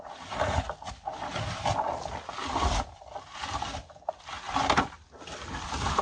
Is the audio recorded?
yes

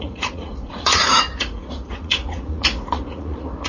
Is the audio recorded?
no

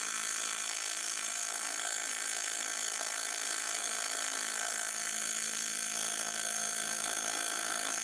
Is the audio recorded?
no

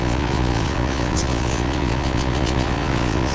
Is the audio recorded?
no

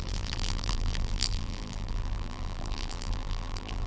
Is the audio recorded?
no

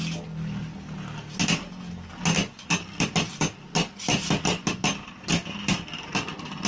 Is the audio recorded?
yes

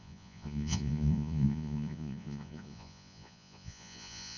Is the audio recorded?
no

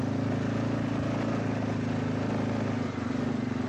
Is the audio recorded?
yes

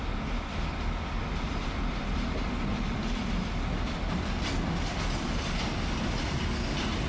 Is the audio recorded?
yes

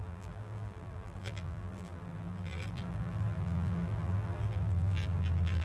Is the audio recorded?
no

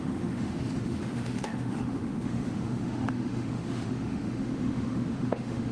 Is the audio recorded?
no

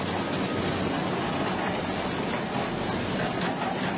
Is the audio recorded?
yes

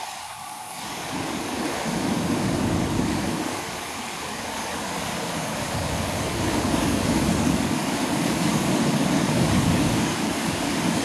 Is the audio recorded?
no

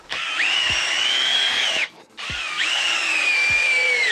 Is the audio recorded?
no